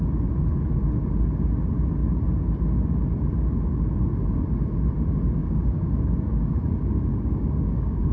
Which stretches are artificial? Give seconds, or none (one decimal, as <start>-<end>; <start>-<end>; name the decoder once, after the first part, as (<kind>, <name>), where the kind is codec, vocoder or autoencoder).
5.4-8.1 (codec, DAC)